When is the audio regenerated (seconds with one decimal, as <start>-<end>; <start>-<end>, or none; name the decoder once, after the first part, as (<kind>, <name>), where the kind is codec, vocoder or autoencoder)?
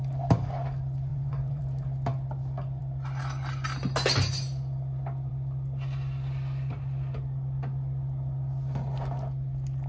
1.1-1.6 (vocoder, Vocos)